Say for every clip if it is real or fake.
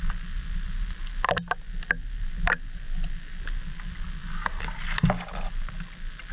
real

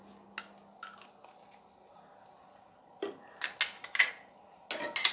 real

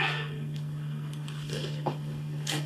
fake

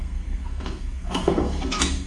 fake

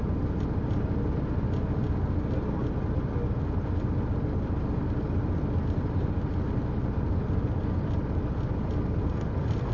real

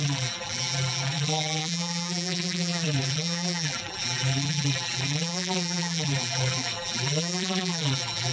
fake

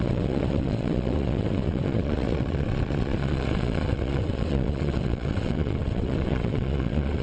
fake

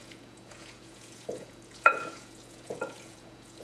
fake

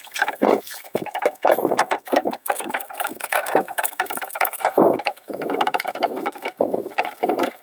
fake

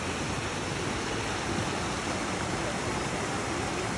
real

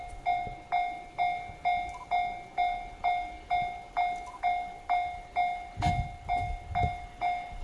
real